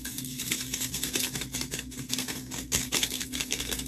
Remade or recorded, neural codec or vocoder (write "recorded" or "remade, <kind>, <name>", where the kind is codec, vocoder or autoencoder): remade, codec, SNAC